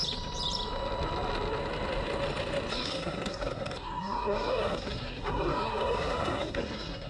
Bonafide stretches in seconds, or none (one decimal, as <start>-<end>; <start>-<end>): 0.0-2.7